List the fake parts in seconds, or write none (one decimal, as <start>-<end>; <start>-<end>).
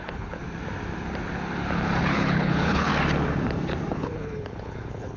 0.0-0.4; 2.0-2.9; 3.9-5.2